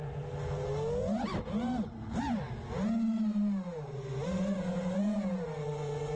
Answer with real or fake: real